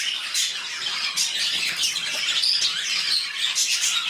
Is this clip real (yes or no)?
no